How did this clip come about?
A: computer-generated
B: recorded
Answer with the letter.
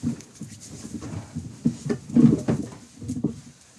B